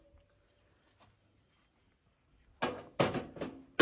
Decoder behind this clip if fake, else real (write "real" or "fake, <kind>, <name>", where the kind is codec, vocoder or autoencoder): real